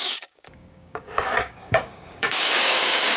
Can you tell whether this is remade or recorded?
remade